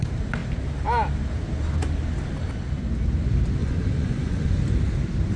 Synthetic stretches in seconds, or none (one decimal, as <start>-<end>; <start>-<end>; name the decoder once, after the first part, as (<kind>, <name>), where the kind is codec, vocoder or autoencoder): 3.6-4.5 (vocoder, Vocos)